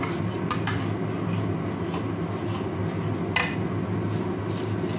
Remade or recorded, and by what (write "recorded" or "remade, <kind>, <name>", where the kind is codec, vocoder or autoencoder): recorded